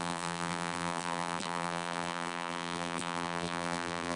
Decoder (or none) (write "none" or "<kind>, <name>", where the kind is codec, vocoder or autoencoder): vocoder, BigVGAN v2